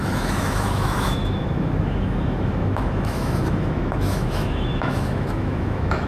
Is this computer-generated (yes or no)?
yes